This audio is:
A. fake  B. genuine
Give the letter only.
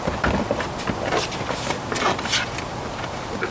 B